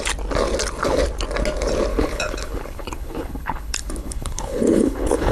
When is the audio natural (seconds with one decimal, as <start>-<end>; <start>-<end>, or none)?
0.0-1.9

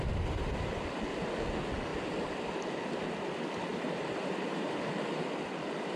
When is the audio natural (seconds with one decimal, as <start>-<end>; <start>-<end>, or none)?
0.0-6.0

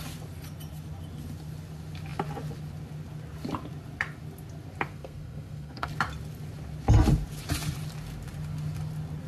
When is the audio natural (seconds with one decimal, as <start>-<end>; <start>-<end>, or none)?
0.0-4.9; 5.9-9.3

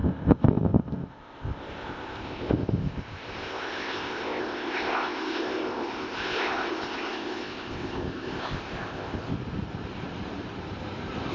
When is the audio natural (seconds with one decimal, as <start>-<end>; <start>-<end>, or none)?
9.3-11.3

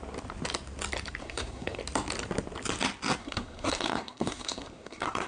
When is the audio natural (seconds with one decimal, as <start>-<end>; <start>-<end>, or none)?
0.0-1.2; 1.8-3.2

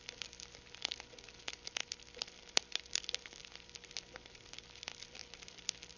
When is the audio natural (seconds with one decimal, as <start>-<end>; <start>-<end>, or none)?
0.0-6.0

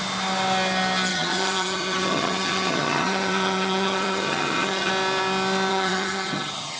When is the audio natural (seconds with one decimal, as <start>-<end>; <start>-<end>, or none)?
0.0-1.1; 4.9-5.7